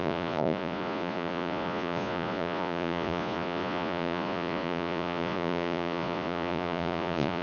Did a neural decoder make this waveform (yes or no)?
yes